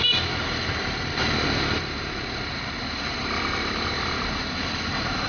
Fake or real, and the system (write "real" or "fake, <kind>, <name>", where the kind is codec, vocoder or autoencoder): fake, vocoder, BigVGAN v2